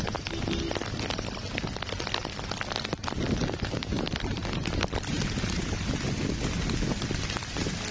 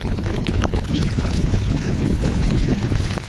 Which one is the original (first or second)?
first